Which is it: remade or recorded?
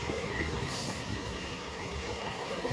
remade